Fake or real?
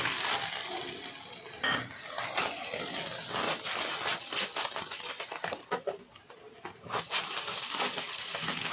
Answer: real